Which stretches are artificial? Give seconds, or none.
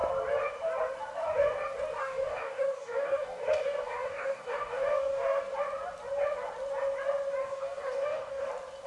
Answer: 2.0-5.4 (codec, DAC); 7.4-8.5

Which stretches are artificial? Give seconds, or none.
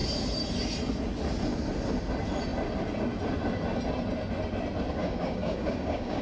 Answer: 5.0-6.2 (codec, DAC)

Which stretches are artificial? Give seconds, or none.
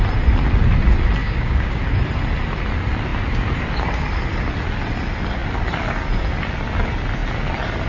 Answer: 1.2-1.8 (codec, DAC)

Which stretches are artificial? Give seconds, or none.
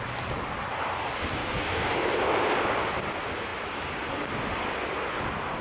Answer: 1.4-2.6 (codec, DAC)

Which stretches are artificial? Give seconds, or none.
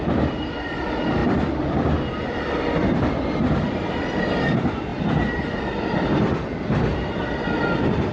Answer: none